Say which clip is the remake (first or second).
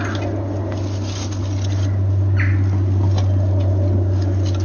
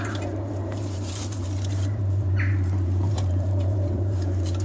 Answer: second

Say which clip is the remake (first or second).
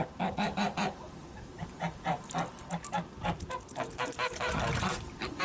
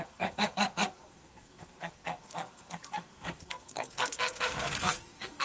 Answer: second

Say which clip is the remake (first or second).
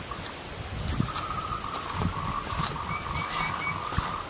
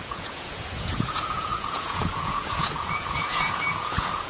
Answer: second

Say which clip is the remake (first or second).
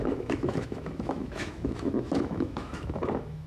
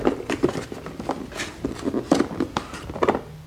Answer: first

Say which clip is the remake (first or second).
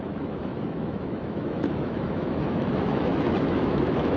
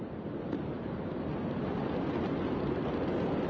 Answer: first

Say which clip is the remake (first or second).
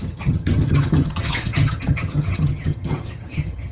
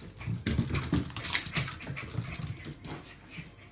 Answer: first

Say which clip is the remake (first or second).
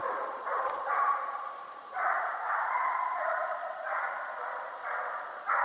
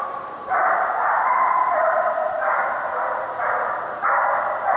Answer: first